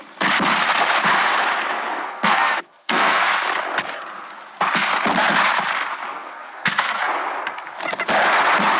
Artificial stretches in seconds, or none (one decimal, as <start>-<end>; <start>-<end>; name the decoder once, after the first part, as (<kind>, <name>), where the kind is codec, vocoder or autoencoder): 1.9-3.3 (codec, SNAC); 6.1-7.0